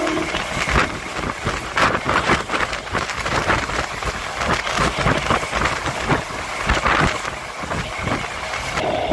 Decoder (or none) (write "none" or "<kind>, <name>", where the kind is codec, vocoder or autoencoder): none